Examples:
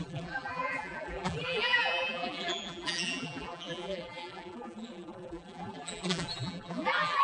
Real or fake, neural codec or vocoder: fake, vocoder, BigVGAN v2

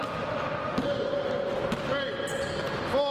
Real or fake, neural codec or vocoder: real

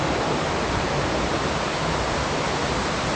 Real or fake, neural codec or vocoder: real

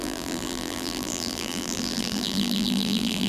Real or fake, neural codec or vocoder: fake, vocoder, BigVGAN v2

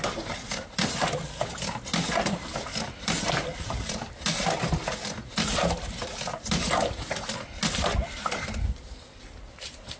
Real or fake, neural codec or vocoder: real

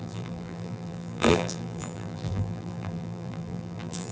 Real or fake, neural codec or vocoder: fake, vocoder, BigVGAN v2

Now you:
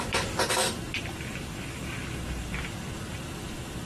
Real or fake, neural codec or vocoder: fake, vocoder, BigVGAN v2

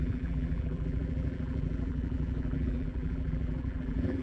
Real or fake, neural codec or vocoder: fake, vocoder, BigVGAN v2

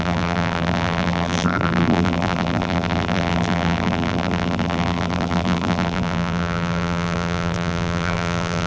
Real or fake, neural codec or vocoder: fake, vocoder, BigVGAN v2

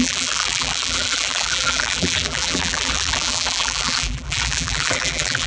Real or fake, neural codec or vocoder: fake, vocoder, BigVGAN v2